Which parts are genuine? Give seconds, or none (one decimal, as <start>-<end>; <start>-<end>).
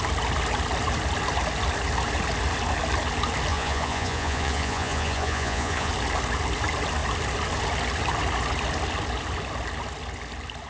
0.0-3.5; 5.9-10.7